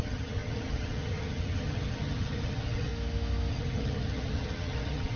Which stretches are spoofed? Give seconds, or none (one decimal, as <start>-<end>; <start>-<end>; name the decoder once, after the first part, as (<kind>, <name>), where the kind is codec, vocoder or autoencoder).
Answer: 0.0-2.9 (vocoder, HiFi-GAN); 3.5-5.2